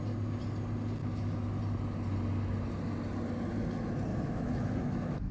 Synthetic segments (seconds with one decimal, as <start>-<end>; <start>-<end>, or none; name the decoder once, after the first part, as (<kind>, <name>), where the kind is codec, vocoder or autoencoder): 1.0-1.6 (autoencoder, DAC-VAE); 4.1-5.3